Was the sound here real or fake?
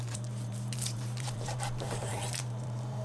fake